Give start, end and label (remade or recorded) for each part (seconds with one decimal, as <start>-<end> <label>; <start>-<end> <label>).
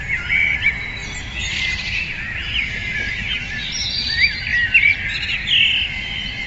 0.0-4.5 remade; 4.5-5.7 recorded; 5.7-6.5 remade